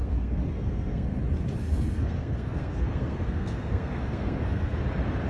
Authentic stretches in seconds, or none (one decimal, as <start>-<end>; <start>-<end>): 1.2-1.6; 4.8-5.3